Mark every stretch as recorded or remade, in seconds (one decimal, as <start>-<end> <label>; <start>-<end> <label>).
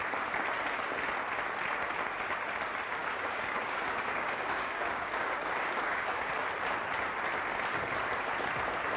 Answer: 0.0-3.0 recorded; 3.0-6.3 remade; 6.3-9.0 recorded